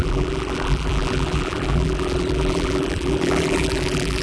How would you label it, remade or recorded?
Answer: remade